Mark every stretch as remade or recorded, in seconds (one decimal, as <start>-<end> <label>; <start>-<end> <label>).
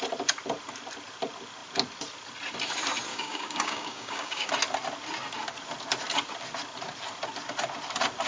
0.0-3.1 recorded; 3.1-4.5 remade; 4.5-8.3 recorded